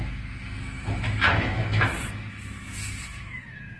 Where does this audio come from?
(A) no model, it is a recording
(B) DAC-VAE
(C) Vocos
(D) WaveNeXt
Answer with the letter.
B